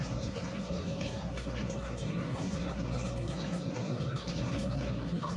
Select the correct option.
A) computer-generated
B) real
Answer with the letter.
A